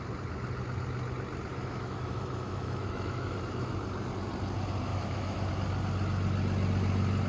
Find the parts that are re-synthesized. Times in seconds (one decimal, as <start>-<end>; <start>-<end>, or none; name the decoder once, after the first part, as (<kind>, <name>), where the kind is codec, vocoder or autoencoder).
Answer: 1.5-3.7 (autoencoder, DAC-VAE); 4.9-5.5